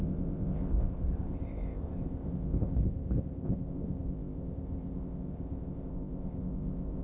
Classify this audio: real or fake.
fake